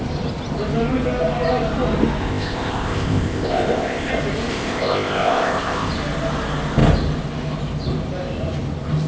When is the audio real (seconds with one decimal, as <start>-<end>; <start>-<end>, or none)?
0.0-2.2; 4.1-4.5; 5.9-9.1